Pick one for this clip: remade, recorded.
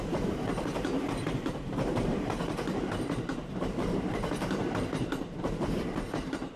remade